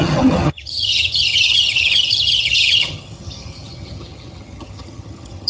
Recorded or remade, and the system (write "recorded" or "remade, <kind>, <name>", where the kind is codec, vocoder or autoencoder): remade, vocoder, HiFi-GAN